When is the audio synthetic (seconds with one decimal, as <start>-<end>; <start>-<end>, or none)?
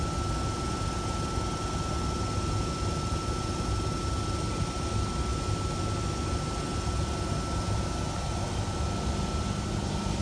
none